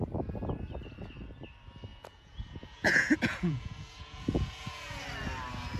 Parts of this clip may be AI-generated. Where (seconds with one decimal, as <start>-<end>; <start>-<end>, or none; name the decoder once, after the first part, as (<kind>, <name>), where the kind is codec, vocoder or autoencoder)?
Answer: 1.9-5.0 (vocoder, Vocos)